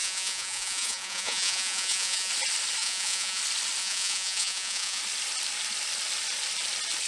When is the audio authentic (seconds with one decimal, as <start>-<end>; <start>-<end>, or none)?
2.3-2.8; 3.4-3.8; 5.0-7.1